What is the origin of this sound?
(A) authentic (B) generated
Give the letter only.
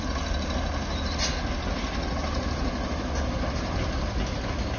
A